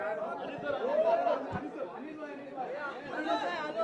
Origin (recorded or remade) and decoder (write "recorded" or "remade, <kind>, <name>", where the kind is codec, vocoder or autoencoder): recorded